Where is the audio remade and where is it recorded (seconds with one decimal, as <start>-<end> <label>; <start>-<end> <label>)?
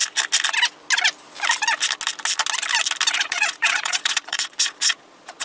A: 0.0-3.2 recorded; 3.2-5.4 remade